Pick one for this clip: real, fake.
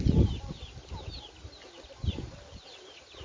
real